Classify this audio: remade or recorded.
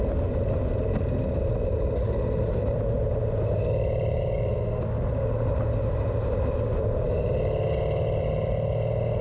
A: recorded